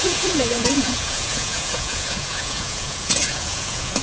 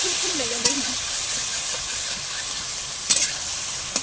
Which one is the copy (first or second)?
first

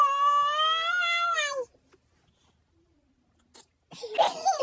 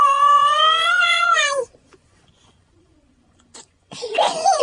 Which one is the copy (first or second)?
second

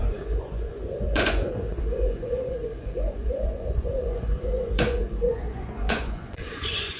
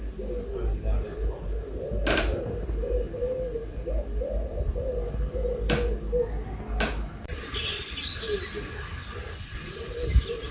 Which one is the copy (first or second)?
first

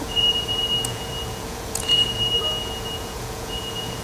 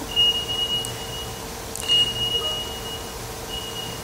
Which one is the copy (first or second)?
first